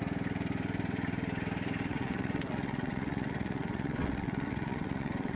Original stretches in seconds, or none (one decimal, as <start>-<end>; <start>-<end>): 0.0-1.9